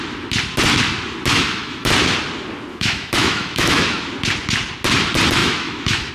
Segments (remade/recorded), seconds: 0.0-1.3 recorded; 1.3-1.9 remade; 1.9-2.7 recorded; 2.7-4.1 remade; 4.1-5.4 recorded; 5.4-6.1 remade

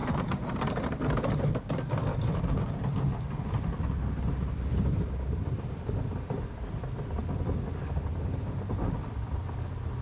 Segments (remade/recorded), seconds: 0.0-10.0 recorded

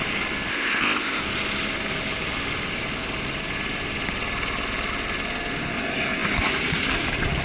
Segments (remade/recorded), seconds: 0.0-0.5 recorded; 0.5-1.2 remade; 1.2-7.4 recorded

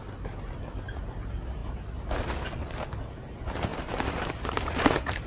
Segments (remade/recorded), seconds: 0.0-1.6 recorded; 1.6-2.1 remade; 2.1-3.7 recorded; 3.7-5.3 remade

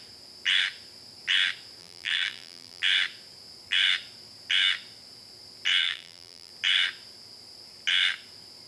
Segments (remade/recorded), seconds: 0.0-1.8 recorded; 1.8-2.8 remade; 2.8-5.8 recorded; 5.8-6.5 remade; 6.5-8.7 recorded

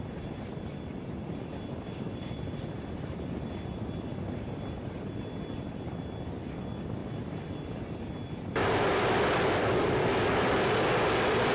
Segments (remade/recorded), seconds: 0.0-11.5 recorded

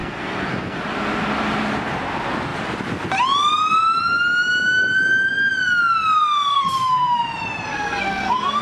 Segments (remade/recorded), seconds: 0.0-0.8 remade; 0.8-6.5 recorded; 6.5-7.2 remade; 7.2-7.7 recorded; 7.7-8.6 remade

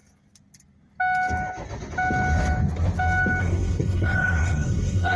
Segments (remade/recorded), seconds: 0.0-3.4 recorded; 3.4-5.2 remade